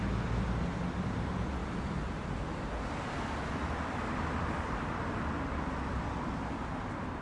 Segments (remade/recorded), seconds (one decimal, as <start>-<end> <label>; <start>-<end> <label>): 0.0-7.2 recorded